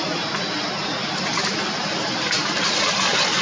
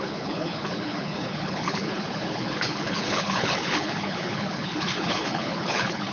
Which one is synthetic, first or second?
second